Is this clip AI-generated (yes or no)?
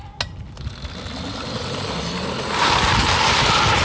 no